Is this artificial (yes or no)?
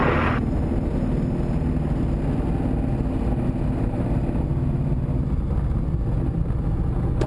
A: no